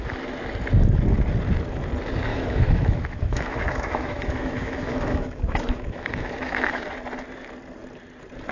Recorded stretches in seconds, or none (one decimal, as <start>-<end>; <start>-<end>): 0.0-2.3; 6.8-8.5